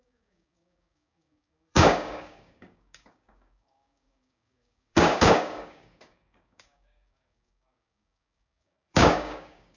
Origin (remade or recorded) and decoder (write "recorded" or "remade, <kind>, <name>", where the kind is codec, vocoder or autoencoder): remade, codec, DAC